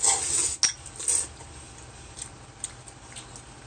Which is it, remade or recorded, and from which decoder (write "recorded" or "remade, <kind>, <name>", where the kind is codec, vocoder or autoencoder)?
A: recorded